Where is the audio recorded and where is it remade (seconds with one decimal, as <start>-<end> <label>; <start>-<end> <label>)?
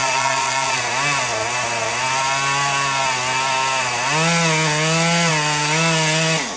0.0-0.8 remade; 0.8-6.6 recorded